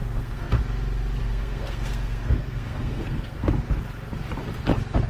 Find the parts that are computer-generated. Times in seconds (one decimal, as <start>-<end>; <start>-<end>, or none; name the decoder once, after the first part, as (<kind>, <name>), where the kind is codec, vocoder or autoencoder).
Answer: 0.0-0.6 (codec, SNAC); 1.2-3.5